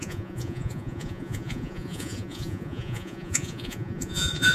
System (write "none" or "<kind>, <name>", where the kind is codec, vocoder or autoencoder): vocoder, Vocos